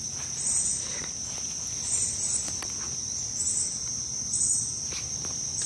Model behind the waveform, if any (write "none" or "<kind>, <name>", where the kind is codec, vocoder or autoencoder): none